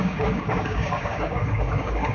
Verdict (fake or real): fake